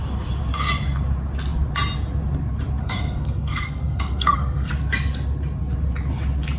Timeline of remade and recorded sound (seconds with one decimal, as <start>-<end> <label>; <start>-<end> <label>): 0.0-2.8 recorded; 2.8-4.7 remade; 4.7-6.6 recorded